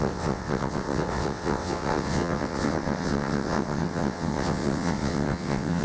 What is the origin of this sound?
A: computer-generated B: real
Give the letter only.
A